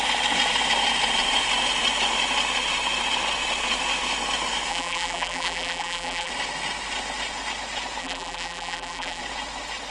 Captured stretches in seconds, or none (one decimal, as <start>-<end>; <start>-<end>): 0.0-4.7; 6.3-8.0; 9.2-9.9